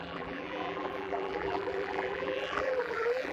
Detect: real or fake fake